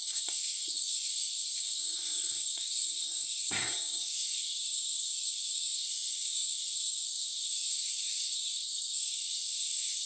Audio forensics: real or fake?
fake